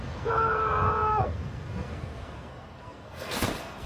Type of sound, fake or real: fake